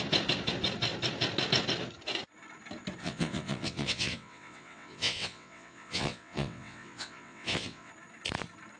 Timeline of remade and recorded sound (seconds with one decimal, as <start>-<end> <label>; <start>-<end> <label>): 0.0-3.0 recorded; 3.0-7.9 remade; 7.9-8.8 recorded